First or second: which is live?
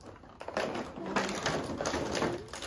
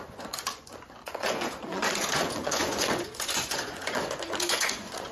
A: first